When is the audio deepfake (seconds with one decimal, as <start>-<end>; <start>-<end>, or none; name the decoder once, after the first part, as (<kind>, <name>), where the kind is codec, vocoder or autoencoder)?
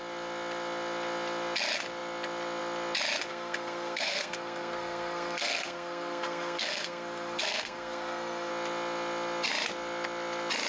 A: 3.3-8.5 (codec, SNAC)